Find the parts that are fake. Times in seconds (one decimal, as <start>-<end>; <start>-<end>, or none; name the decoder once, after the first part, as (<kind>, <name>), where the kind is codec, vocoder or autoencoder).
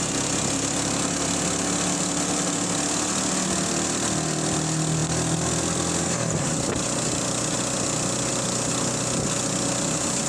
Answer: none